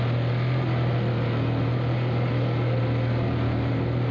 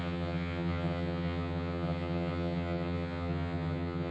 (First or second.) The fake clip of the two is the second